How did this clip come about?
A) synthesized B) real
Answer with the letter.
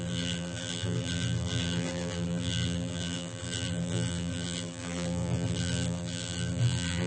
A